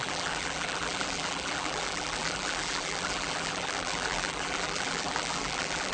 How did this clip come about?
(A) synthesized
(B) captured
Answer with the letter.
A